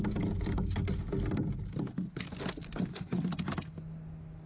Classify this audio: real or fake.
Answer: real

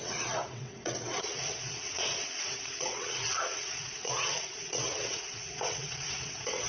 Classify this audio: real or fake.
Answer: fake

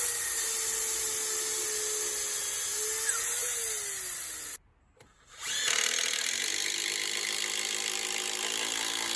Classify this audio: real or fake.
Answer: real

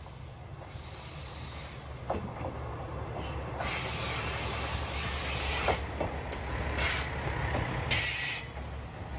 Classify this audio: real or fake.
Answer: real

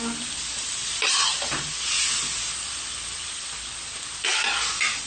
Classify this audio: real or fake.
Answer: real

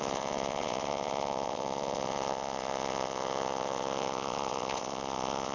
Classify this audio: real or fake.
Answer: fake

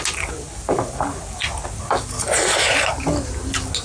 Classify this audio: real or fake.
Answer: real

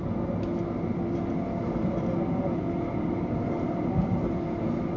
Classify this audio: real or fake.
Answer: real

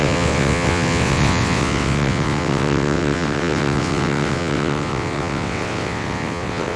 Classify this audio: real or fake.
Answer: fake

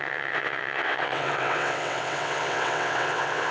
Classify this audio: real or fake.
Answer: fake